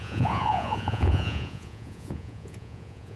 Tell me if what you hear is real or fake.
fake